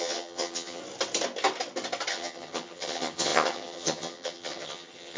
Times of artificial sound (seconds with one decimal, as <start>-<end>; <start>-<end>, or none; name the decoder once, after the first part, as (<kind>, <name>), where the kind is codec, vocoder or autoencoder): 0.0-0.8 (vocoder, HiFi-GAN); 2.1-5.2